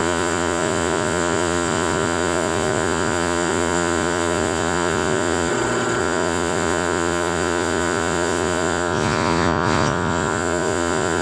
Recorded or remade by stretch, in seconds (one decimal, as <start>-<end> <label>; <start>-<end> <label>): 0.0-5.5 remade; 5.5-6.0 recorded; 6.0-11.2 remade